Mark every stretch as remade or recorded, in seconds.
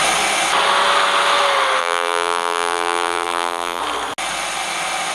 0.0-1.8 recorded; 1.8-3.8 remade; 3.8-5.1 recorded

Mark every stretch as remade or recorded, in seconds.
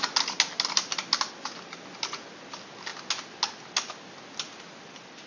0.0-5.3 recorded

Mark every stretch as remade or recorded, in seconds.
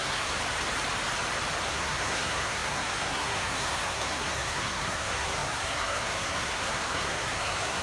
0.0-0.4 remade; 0.4-1.7 recorded; 1.7-7.8 remade